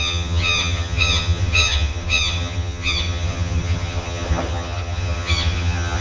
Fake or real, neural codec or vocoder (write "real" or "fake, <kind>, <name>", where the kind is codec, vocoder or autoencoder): fake, vocoder, HiFi-GAN